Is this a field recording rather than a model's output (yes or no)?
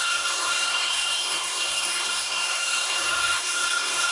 no